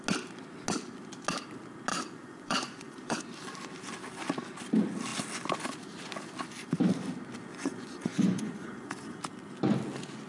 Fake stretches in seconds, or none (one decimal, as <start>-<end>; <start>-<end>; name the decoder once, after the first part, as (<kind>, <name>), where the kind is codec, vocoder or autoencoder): 1.9-3.2 (vocoder, Vocos); 7.5-9.2